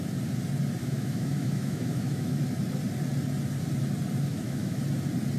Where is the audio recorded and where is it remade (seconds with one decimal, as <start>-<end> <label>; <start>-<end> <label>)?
0.0-0.8 recorded; 0.8-2.4 remade; 2.4-4.3 recorded; 4.3-4.8 remade; 4.8-5.4 recorded